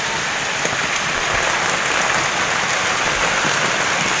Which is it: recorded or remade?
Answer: recorded